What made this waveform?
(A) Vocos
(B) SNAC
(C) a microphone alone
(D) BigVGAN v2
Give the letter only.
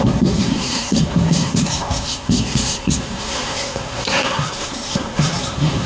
B